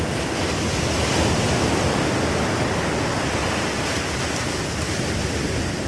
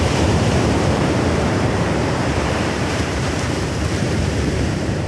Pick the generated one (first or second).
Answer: second